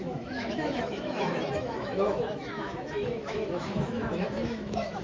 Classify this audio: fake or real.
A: fake